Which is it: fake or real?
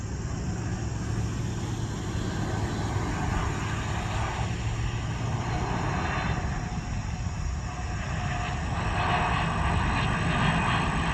real